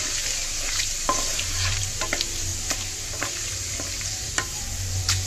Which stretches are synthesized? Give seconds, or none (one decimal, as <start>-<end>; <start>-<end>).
1.3-1.8; 2.5-4.6